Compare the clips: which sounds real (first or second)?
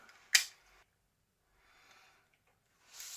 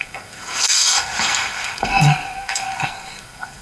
first